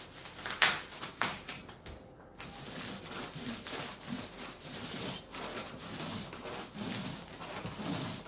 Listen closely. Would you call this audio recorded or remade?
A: recorded